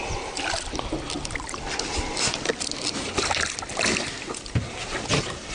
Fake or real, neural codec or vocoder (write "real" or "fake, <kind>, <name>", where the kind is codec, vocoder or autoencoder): real